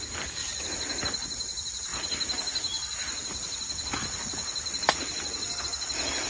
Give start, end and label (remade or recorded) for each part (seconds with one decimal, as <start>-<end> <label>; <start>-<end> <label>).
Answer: 0.0-0.4 recorded; 0.4-1.0 remade; 1.0-6.3 recorded